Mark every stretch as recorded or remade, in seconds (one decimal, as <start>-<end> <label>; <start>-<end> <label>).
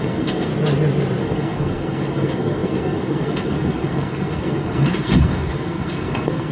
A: 0.0-0.5 remade; 0.5-1.2 recorded; 1.2-6.5 remade